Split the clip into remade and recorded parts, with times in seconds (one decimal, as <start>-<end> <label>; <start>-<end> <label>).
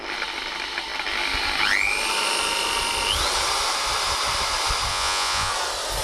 0.0-4.9 recorded; 4.9-5.5 remade; 5.5-6.0 recorded